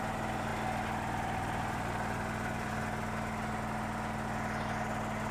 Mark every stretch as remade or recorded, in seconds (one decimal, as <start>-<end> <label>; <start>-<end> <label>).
0.0-5.3 recorded